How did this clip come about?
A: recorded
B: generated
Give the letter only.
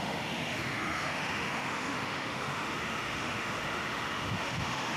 B